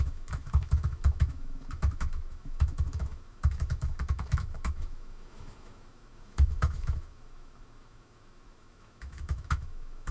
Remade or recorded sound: remade